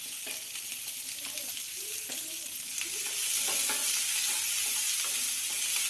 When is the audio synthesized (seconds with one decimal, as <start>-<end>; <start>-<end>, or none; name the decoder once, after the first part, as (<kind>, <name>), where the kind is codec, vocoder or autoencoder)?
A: 1.5-2.1 (vocoder, BigVGAN v2); 3.8-4.3